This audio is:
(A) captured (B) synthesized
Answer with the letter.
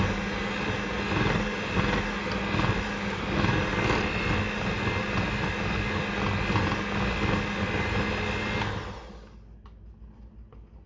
A